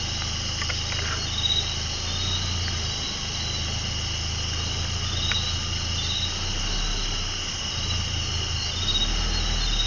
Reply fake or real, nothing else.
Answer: real